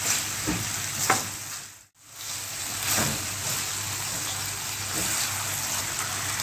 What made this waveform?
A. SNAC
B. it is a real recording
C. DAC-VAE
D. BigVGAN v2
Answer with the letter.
B